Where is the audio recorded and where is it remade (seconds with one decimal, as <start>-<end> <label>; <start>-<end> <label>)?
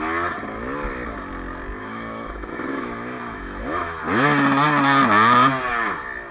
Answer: 0.0-1.8 recorded; 1.8-4.0 remade; 4.0-6.3 recorded